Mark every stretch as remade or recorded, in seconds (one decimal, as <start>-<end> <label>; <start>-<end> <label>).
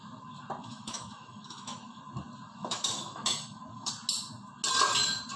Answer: 0.0-0.6 recorded; 0.6-2.0 remade; 2.0-2.6 recorded; 2.6-3.9 remade; 3.9-5.4 recorded